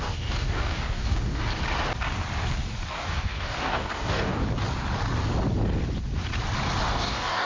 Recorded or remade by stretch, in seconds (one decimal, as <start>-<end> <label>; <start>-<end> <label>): 0.0-1.5 remade; 1.5-2.9 recorded; 2.9-4.4 remade; 4.4-6.9 recorded; 6.9-7.4 remade